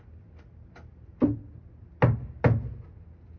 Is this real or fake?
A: real